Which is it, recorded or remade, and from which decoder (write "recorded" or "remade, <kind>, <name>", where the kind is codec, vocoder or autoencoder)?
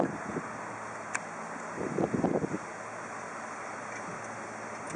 recorded